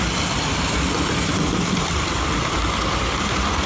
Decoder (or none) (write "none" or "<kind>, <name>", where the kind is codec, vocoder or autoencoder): vocoder, BigVGAN v2